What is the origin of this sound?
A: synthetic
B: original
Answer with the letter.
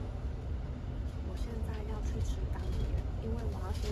B